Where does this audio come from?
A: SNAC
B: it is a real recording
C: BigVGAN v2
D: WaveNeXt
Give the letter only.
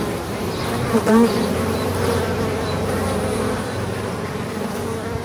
C